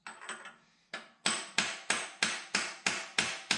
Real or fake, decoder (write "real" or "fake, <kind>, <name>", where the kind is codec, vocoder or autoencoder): real